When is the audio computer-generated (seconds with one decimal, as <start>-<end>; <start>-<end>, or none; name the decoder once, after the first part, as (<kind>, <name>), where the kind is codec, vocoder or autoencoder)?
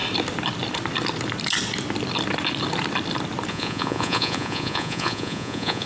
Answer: 3.5-5.9 (vocoder, Vocos)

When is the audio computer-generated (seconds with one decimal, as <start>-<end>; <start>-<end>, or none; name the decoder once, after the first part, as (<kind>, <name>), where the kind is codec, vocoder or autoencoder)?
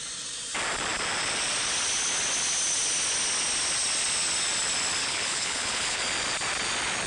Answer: 5.0-6.0 (codec, HILCodec)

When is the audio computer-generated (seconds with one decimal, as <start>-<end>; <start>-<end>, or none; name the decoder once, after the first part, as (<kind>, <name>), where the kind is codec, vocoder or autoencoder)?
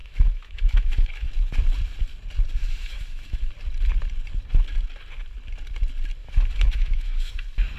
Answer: 0.0-1.3 (autoencoder, DAC-VAE); 2.6-3.5; 6.2-7.3